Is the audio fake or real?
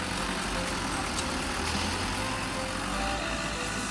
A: real